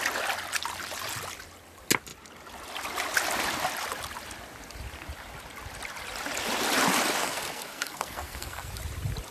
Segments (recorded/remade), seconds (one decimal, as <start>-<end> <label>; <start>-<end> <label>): 0.0-7.2 recorded; 7.2-8.7 remade; 8.7-9.3 recorded